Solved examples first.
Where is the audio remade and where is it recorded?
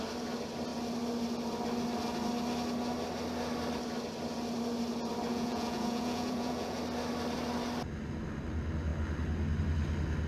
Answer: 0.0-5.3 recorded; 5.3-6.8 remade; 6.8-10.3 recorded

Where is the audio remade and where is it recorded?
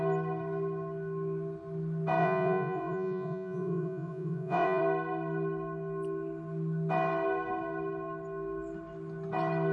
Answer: 0.0-2.2 recorded; 2.2-4.8 remade; 4.8-9.7 recorded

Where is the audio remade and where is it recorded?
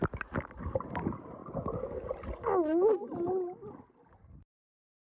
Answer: 0.0-5.0 recorded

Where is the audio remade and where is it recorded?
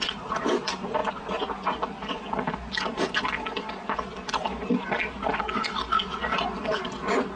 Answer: 0.0-7.4 recorded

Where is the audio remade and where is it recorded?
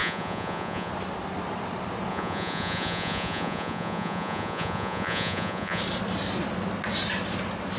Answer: 0.0-0.9 remade; 0.9-2.1 recorded; 2.1-5.8 remade; 5.8-7.8 recorded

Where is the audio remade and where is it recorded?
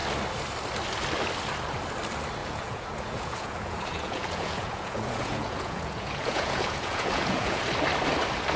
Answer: 0.0-2.4 recorded; 2.4-7.6 remade; 7.6-8.6 recorded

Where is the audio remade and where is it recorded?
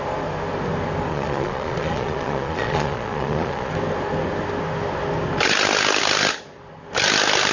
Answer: 0.0-1.1 recorded; 1.1-3.7 remade; 3.7-7.5 recorded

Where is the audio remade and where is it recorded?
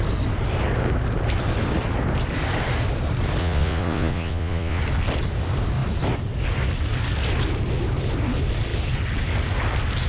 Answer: 0.0-3.4 recorded; 3.4-4.8 remade; 4.8-10.1 recorded